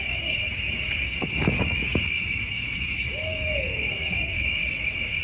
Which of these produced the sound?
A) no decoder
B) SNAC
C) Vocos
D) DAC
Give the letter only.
D